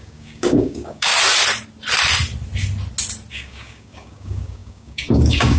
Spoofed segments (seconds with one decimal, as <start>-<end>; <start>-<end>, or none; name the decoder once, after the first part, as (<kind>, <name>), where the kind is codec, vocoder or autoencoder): 0.0-1.1 (codec, DAC); 3.3-5.6